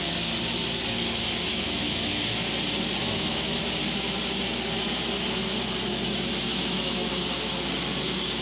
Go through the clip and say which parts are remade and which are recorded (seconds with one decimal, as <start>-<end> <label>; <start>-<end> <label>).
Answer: 0.0-1.5 recorded; 1.5-2.2 remade; 2.2-3.0 recorded; 3.0-3.6 remade; 3.6-6.5 recorded; 6.5-7.1 remade; 7.1-8.4 recorded